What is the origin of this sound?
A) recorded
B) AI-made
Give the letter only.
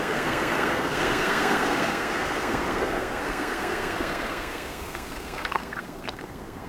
B